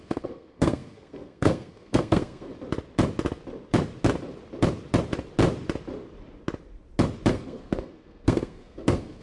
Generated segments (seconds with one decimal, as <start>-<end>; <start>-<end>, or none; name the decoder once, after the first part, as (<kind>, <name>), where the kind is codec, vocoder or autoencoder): 0.0-2.5 (codec, SNAC); 7.3-9.2